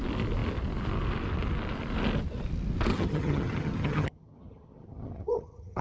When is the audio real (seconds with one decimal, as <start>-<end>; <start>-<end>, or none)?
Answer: 0.0-2.9